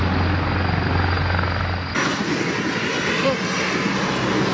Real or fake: real